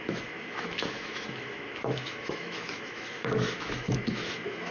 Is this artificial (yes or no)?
yes